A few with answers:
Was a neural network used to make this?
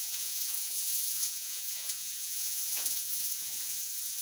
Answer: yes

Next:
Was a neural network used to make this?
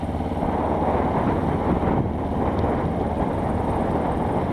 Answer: no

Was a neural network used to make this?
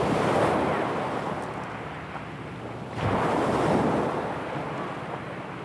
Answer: no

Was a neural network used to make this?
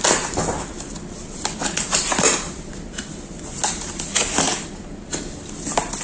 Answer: no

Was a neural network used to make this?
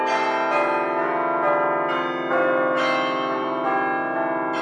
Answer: no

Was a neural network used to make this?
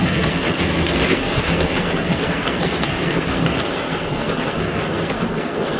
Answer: yes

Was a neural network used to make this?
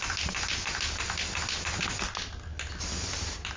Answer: no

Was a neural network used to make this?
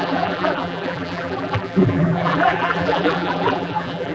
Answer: yes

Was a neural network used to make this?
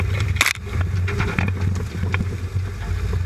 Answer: no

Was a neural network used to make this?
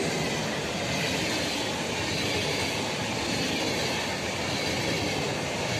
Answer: no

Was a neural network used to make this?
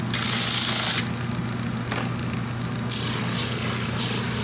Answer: no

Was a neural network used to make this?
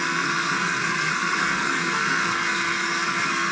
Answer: yes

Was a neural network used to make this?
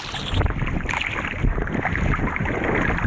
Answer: no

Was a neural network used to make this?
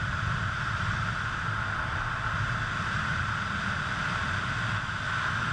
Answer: no